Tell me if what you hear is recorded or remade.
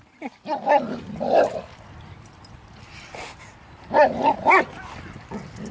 recorded